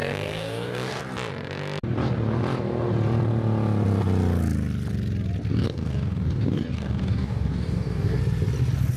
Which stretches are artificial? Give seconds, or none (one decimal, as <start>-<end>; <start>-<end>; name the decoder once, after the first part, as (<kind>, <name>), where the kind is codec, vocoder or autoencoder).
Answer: 0.0-1.0 (codec, DAC); 5.5-8.2